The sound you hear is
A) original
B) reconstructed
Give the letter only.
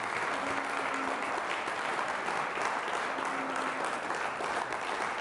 A